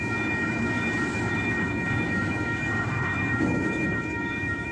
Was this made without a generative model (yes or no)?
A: no